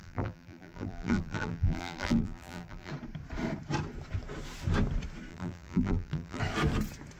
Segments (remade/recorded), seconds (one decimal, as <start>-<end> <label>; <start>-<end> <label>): 0.0-2.9 remade; 2.9-5.3 recorded; 5.3-6.4 remade; 6.4-7.2 recorded